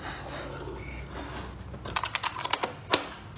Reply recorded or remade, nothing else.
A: recorded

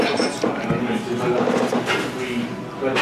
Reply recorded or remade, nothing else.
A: recorded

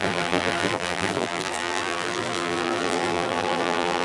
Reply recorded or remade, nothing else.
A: remade